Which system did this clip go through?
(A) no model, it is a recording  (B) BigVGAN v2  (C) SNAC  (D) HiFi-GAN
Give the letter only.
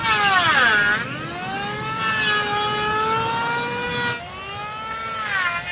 A